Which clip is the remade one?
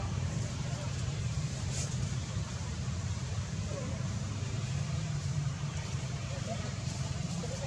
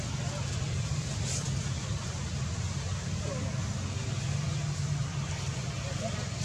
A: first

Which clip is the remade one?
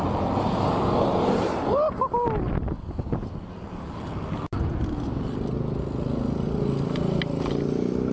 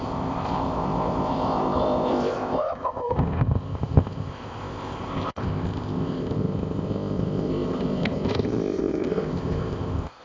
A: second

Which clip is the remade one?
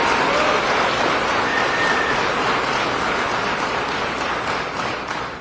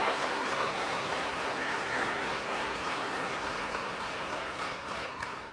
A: second